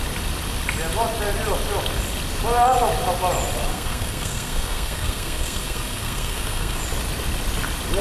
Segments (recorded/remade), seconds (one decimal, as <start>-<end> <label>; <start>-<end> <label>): 0.0-3.7 recorded; 3.7-6.8 remade; 6.8-8.0 recorded